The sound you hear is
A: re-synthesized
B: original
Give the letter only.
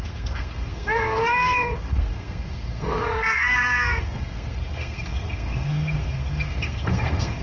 A